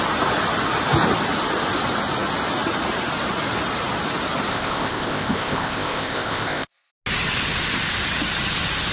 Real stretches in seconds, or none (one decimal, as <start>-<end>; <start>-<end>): 0.0-4.5; 6.9-8.9